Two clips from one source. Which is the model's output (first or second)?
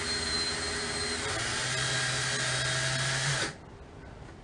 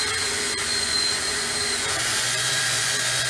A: second